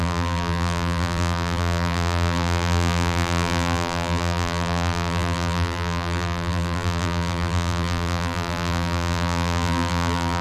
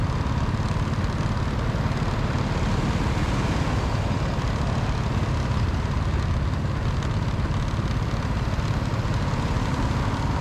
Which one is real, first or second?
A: second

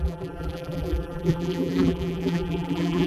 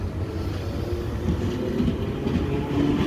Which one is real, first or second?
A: second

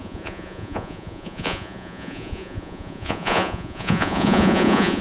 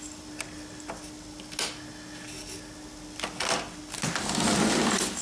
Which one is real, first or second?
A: second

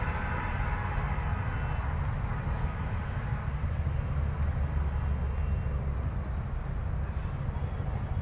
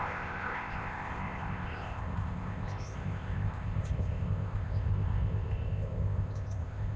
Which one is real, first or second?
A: first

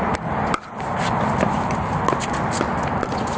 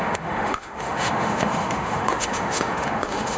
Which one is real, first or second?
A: first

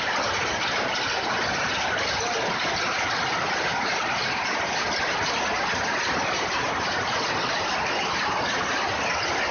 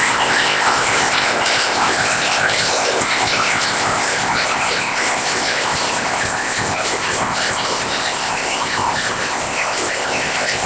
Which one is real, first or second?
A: first